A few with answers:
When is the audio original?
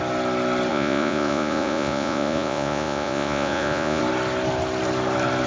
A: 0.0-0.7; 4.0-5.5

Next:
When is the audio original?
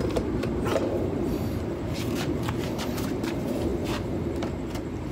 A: none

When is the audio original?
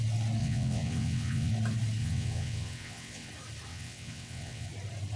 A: 0.0-0.4; 1.5-2.0; 3.3-3.7; 4.7-5.2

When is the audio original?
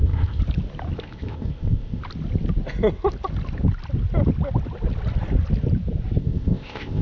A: 0.4-1.0; 2.0-6.2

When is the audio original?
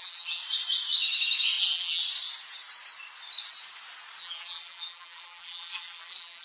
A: 0.4-1.6; 2.0-4.2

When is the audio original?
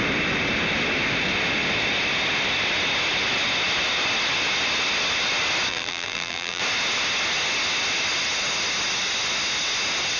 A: 0.0-5.7; 6.6-10.2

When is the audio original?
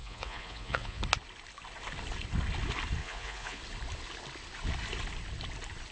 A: 1.0-3.0; 3.6-5.9